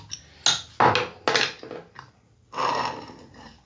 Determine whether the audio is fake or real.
real